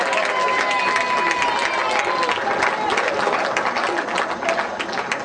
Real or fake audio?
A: real